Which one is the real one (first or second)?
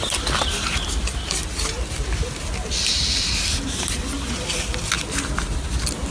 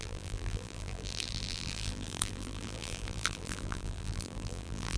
first